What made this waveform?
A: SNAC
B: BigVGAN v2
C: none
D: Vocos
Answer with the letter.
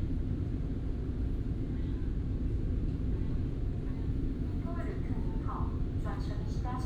C